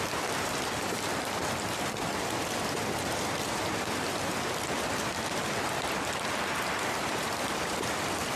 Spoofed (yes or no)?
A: yes